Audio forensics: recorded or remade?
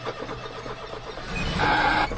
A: recorded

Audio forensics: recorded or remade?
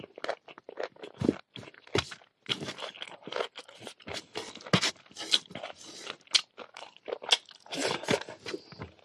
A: recorded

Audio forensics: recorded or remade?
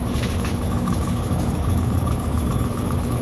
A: remade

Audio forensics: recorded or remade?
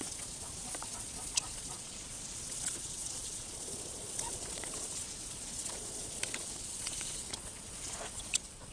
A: remade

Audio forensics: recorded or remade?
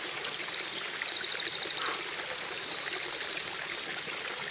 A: recorded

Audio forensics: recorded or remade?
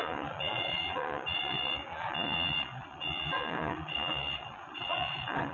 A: remade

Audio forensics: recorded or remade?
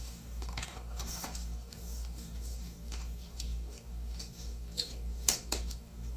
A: remade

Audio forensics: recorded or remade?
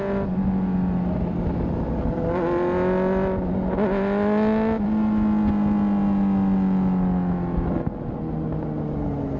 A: recorded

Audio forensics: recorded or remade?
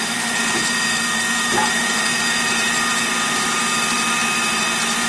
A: remade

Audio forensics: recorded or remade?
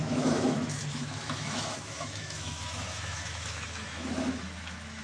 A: remade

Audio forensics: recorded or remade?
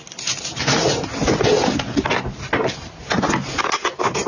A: recorded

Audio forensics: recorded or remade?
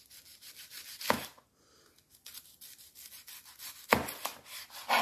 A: recorded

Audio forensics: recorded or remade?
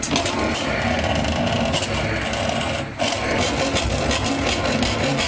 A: recorded